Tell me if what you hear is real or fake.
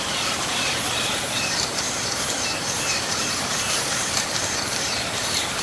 fake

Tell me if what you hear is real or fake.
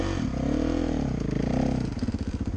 real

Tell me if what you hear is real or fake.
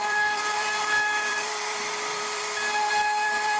fake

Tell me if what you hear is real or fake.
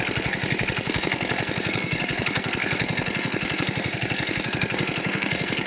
fake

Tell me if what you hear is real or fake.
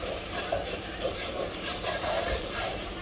fake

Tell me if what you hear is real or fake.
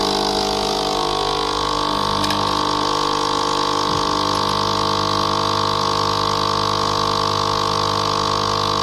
real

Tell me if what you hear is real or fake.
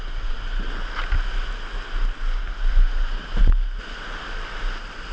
real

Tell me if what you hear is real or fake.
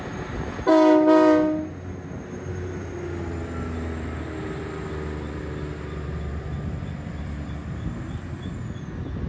real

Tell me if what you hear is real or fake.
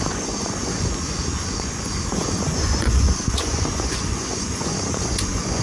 fake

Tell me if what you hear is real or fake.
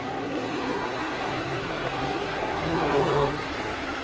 fake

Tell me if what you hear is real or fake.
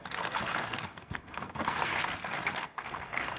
fake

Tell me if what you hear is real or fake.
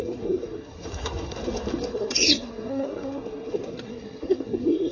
fake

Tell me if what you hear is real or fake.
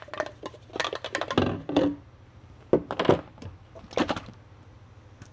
real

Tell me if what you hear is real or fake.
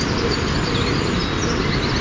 real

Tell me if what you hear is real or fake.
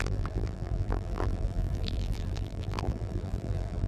fake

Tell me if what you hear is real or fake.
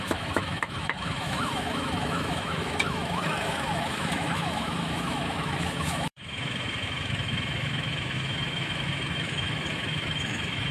fake